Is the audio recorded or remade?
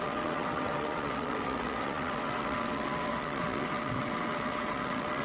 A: remade